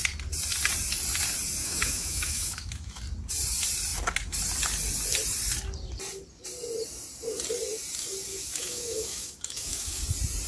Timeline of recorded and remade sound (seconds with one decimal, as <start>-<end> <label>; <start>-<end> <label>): 0.0-1.6 recorded; 1.6-3.0 remade; 3.0-8.3 recorded; 8.3-10.0 remade; 10.0-10.5 recorded

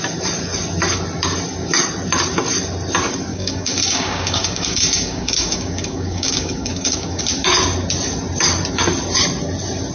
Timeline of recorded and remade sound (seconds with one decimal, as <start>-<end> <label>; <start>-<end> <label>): 0.0-3.3 recorded; 3.3-7.2 remade; 7.2-9.9 recorded